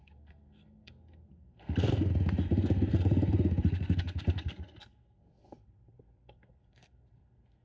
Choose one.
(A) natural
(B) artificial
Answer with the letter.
B